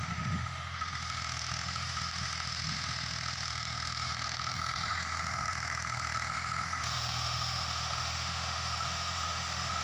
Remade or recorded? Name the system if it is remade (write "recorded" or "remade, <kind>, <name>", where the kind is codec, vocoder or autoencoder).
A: remade, autoencoder, DAC-VAE